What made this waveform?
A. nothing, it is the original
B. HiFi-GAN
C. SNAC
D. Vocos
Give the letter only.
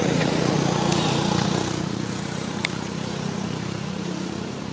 D